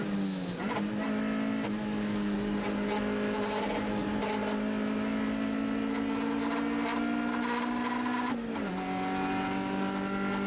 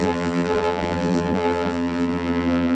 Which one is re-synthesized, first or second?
second